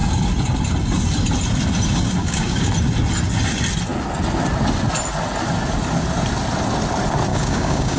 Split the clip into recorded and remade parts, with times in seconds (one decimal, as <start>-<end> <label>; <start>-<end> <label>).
0.0-2.2 recorded; 2.2-2.7 remade; 2.7-7.3 recorded; 7.3-8.0 remade